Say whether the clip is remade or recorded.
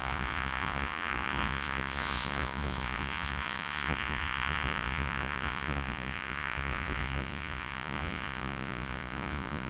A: remade